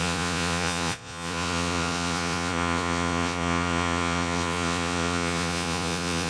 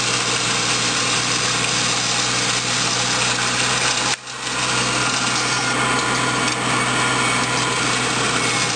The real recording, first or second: second